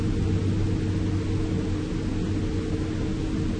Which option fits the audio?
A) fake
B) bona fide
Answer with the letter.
B